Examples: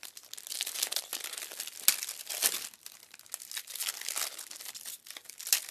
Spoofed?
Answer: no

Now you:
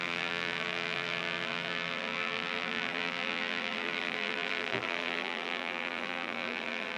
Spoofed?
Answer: yes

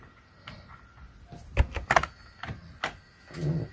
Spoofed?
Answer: no